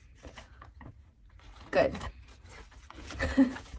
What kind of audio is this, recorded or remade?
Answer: remade